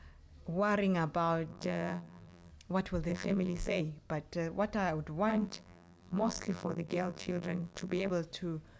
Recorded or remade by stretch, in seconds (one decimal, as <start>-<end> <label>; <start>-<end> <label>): 0.0-1.5 recorded; 1.5-2.5 remade; 2.5-3.1 recorded; 3.1-3.8 remade; 3.8-5.3 recorded; 5.3-8.1 remade; 8.1-8.8 recorded